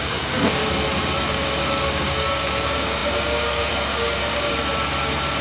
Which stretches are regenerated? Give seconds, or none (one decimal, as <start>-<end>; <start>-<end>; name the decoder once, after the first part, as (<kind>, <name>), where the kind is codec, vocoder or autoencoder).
0.0-0.6 (codec, DAC); 1.2-4.5